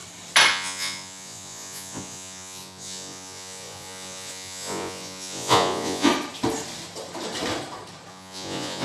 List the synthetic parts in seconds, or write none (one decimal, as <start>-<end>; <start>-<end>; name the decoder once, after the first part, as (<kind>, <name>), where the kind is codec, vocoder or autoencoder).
0.5-6.1 (vocoder, Vocos); 8.1-8.8